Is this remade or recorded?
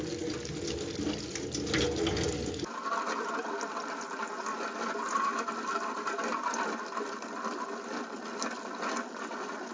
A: recorded